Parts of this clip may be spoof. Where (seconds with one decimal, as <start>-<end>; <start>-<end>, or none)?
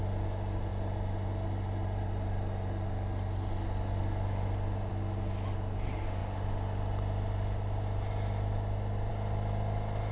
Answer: none